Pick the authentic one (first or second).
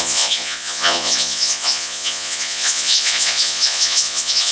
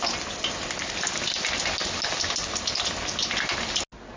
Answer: second